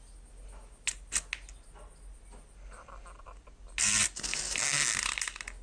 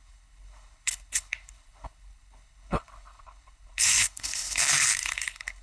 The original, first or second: first